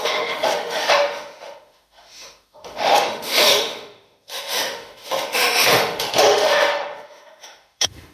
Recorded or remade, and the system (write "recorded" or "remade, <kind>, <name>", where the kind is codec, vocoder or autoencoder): remade, autoencoder, DAC-VAE